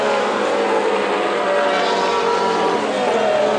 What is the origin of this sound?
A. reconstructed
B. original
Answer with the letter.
B